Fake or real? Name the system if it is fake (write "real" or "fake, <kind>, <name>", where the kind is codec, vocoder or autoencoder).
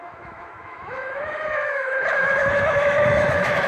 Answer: fake, autoencoder, DAC-VAE